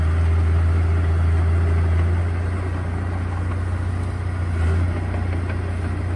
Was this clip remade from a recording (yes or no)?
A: no